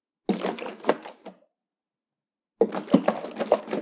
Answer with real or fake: real